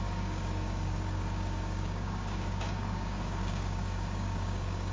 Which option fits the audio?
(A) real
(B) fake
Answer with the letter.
B